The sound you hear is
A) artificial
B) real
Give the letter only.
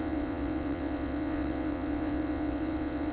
A